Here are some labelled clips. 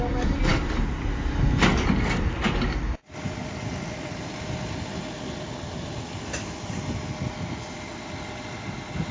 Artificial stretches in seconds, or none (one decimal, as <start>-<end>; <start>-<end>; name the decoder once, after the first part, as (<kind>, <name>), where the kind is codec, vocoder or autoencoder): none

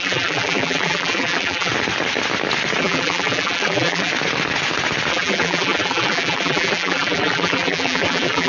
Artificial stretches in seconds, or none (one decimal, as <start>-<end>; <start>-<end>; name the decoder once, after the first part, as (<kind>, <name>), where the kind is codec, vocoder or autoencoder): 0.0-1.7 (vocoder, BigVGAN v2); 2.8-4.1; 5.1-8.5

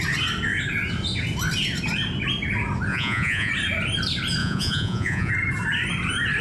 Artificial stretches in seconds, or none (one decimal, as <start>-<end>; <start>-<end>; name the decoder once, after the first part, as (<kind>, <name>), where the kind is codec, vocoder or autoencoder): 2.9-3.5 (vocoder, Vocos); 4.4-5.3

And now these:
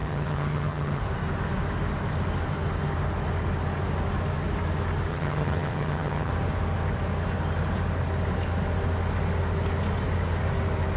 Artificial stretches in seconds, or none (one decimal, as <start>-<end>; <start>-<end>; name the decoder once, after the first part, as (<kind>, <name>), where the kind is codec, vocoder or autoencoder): 0.0-1.0 (vocoder, HiFi-GAN); 5.1-6.3